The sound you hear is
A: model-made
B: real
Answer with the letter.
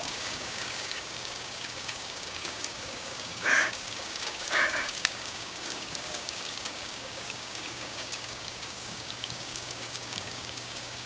A